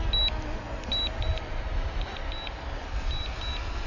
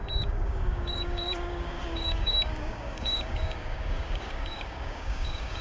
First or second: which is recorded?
first